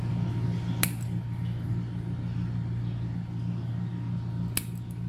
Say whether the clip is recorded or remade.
recorded